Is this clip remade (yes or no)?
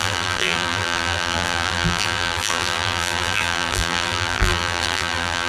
yes